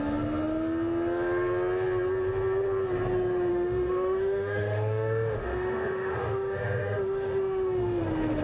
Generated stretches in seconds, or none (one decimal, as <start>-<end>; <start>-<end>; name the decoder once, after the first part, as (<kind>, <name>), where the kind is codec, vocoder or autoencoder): 3.5-8.0 (autoencoder, DAC-VAE)